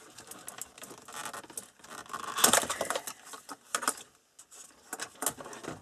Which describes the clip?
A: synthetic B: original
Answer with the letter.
B